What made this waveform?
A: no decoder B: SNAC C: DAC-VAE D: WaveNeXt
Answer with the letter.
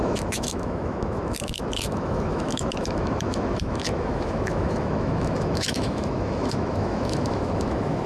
C